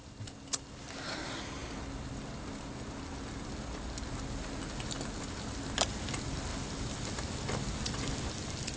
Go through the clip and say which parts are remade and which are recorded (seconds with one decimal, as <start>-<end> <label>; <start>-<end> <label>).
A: 0.0-8.8 recorded